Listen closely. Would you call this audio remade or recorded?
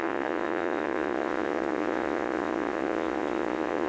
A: remade